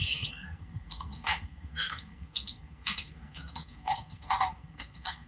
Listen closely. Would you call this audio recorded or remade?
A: remade